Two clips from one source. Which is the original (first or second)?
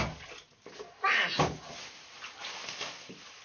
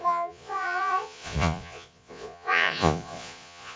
first